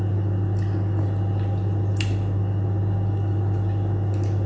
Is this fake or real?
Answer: real